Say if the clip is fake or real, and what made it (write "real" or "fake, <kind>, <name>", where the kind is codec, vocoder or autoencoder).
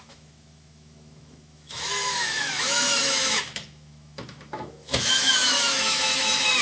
fake, autoencoder, DAC-VAE